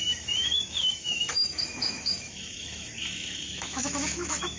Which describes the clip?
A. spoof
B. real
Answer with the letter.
A